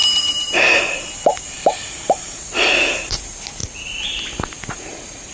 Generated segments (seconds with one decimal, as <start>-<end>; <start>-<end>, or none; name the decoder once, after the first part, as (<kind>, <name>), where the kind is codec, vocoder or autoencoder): 0.0-3.6 (vocoder, BigVGAN v2); 4.5-5.3